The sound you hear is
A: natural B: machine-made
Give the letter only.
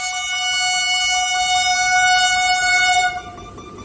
A